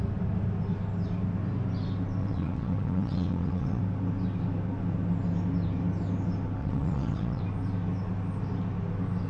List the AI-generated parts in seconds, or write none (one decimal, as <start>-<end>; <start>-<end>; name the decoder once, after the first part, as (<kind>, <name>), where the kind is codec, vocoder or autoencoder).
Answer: 2.2-3.8 (vocoder, WaveNeXt); 6.6-7.4